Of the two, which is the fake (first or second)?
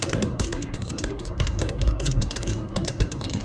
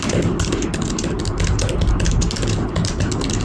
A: first